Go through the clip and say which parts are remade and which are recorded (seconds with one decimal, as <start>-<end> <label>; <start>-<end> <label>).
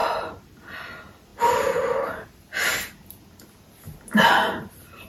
0.0-5.1 recorded